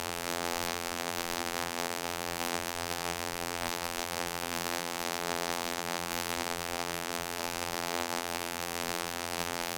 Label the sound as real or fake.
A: fake